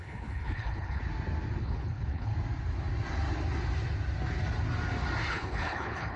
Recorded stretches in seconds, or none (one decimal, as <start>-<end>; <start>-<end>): 1.0-1.6; 2.3-5.3